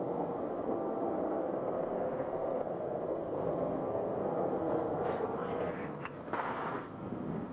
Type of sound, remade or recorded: remade